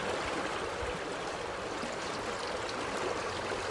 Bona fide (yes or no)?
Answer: yes